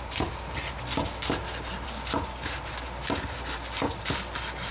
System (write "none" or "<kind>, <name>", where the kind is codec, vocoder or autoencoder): none